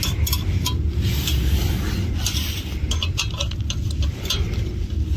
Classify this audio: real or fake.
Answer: real